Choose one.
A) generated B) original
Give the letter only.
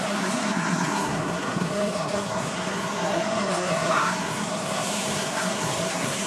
A